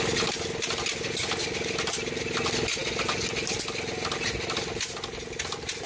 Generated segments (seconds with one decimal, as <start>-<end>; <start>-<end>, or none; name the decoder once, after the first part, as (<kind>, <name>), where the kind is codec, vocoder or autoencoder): none